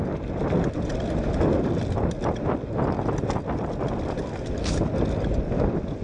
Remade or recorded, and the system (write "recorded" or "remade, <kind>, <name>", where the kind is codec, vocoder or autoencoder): recorded